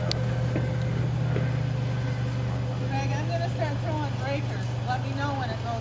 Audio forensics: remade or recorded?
recorded